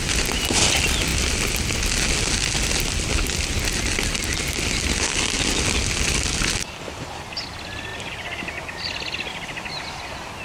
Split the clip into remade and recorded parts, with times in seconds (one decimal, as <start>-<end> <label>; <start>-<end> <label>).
0.0-10.4 recorded